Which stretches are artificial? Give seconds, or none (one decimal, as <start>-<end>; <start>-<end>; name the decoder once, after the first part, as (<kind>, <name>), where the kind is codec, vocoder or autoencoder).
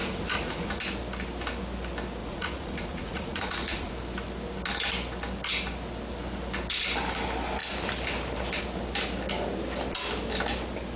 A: 0.0-0.8 (vocoder, Vocos); 2.2-3.9